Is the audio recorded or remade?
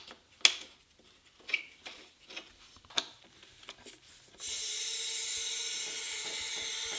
recorded